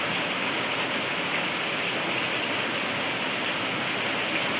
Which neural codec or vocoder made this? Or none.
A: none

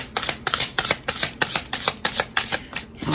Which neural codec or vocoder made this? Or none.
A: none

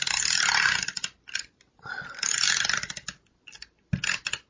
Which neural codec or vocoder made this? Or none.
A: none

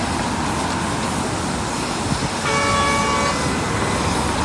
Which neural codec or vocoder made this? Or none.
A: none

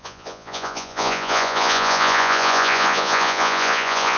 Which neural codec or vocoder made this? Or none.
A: vocoder, Vocos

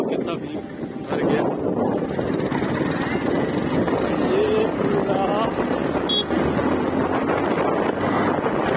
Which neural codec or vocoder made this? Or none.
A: none